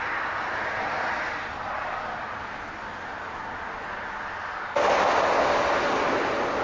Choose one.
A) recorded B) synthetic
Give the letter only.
A